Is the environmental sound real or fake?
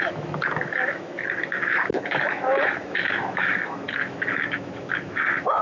fake